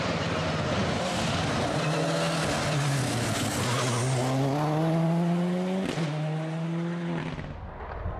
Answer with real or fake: real